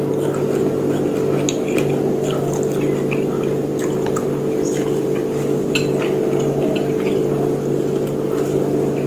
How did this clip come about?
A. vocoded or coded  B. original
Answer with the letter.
B